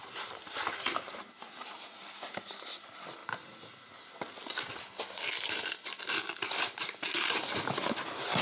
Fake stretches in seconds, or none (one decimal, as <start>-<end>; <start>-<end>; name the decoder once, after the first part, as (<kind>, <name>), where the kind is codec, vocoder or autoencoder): none